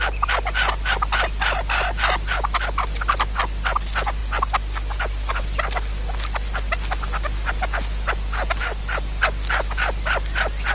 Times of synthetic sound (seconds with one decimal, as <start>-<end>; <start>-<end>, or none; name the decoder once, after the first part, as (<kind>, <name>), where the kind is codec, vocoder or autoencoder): none